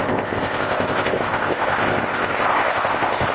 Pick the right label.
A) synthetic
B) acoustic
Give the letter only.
A